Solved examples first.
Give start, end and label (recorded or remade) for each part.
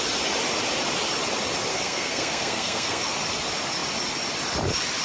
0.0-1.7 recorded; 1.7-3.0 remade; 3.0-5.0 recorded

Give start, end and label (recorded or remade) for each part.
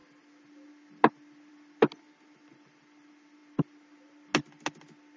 0.0-5.2 recorded